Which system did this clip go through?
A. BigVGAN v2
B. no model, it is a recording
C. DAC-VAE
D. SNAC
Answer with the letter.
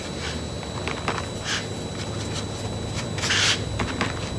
B